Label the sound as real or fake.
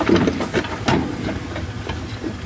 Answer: real